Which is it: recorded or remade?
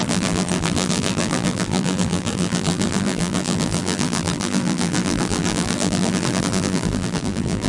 remade